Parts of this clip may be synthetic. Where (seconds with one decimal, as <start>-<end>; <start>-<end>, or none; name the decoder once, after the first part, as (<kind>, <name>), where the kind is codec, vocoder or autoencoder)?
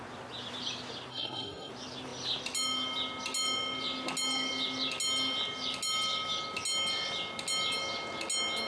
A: 1.1-1.7 (codec, SNAC)